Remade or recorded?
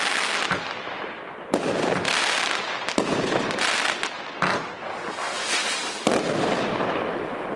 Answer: recorded